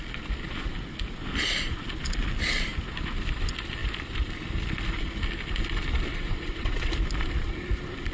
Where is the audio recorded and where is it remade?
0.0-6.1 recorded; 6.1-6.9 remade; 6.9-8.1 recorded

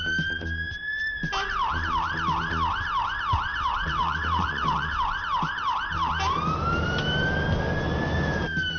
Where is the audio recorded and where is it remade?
0.0-3.5 recorded; 3.5-5.0 remade; 5.0-8.8 recorded

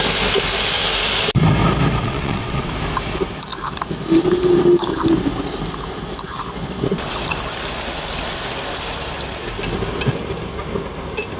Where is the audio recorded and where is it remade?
0.0-2.0 recorded; 2.0-2.7 remade; 2.7-11.4 recorded

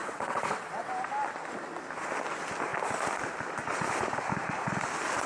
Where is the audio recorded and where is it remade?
0.0-0.9 remade; 0.9-5.3 recorded